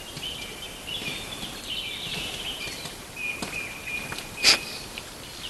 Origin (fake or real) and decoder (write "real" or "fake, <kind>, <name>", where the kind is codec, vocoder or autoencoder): real